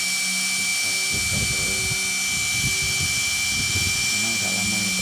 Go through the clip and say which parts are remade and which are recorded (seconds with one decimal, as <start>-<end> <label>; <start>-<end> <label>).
0.0-5.0 recorded